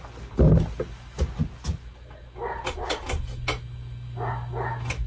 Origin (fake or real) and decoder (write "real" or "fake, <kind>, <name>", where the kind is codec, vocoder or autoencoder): real